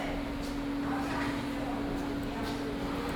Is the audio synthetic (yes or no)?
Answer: no